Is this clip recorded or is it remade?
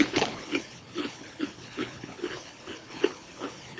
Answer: remade